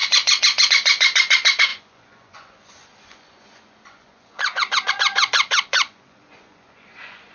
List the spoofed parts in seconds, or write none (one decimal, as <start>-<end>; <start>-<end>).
0.0-7.3